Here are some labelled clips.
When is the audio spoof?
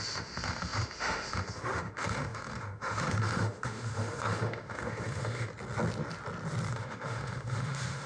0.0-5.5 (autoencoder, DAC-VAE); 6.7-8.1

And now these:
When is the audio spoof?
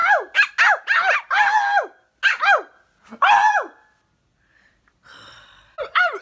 none